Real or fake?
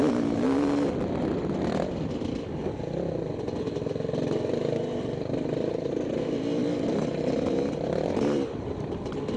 real